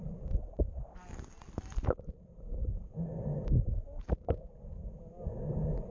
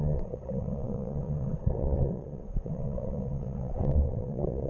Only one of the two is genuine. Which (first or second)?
first